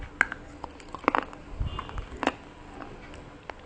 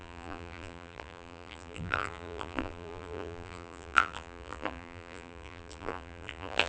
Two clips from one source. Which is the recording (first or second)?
first